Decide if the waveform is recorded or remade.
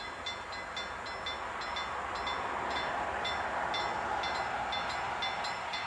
recorded